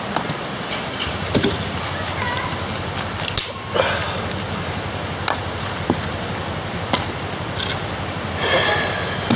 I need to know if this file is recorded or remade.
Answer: recorded